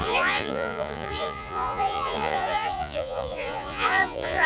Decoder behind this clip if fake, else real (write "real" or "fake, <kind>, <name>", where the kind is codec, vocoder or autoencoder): fake, vocoder, Vocos